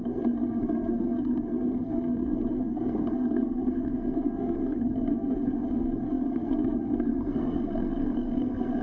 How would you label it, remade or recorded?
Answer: remade